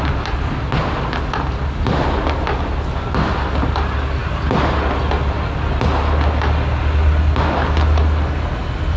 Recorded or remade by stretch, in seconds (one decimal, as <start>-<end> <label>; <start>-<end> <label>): 0.0-9.0 recorded